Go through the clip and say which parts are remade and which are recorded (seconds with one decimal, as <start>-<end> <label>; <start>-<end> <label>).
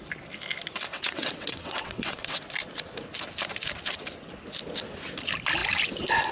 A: 0.0-0.9 recorded; 0.9-2.4 remade; 2.4-6.3 recorded